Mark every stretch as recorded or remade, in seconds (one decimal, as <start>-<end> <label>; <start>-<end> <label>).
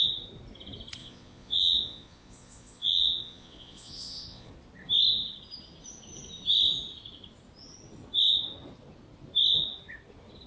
0.0-1.0 recorded; 1.0-4.5 remade; 4.5-10.5 recorded